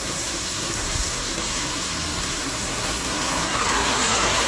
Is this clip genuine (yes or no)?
no